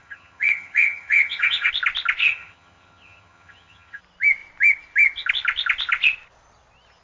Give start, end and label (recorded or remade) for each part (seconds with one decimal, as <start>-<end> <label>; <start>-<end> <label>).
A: 0.0-1.7 remade; 1.7-2.2 recorded; 2.2-4.0 remade; 4.0-7.0 recorded